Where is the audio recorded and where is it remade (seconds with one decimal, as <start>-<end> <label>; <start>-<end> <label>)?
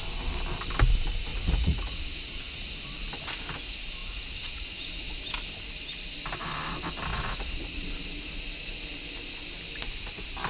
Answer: 0.0-1.3 recorded; 1.3-2.6 remade; 2.6-4.0 recorded; 4.0-5.2 remade; 5.2-7.1 recorded; 7.1-7.9 remade; 7.9-10.5 recorded